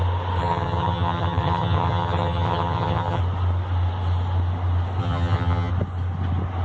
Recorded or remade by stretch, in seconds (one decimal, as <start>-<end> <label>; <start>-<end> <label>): 0.0-0.4 recorded; 0.4-3.2 remade; 3.2-5.0 recorded; 5.0-5.7 remade; 5.7-6.6 recorded